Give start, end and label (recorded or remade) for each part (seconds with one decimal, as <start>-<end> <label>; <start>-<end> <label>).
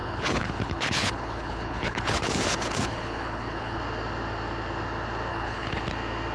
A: 0.0-3.8 remade; 3.8-5.3 recorded; 5.3-5.8 remade; 5.8-6.3 recorded